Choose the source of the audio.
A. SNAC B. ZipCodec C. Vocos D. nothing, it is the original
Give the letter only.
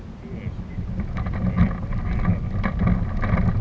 D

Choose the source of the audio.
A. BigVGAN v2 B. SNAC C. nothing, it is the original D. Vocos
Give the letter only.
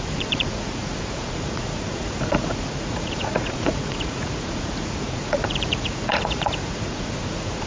D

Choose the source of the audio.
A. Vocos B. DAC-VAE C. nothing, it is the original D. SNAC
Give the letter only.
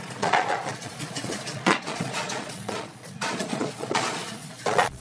A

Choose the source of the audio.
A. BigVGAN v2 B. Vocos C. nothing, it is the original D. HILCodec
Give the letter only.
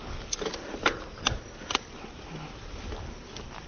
C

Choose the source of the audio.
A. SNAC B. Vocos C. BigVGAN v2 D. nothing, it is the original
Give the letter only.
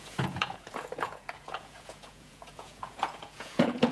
B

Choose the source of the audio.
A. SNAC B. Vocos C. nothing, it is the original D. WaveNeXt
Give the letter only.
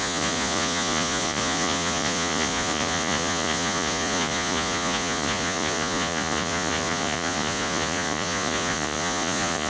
B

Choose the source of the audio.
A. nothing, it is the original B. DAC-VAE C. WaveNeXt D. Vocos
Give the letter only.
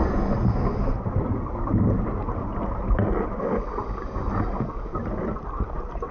A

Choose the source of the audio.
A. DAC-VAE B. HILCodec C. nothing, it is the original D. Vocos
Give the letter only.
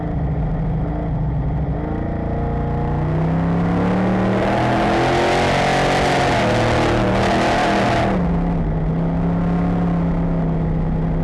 C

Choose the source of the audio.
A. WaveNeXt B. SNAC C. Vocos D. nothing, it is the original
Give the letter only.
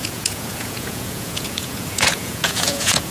C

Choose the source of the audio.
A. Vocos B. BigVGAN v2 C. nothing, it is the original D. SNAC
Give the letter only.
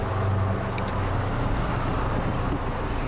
C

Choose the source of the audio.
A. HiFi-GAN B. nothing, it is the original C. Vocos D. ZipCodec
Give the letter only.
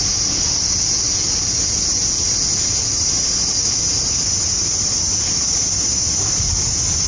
B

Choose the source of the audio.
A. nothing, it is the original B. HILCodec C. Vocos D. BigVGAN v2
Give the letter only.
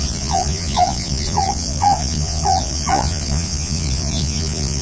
C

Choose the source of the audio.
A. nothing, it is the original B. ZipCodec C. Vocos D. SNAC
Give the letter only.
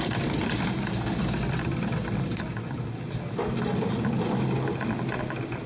A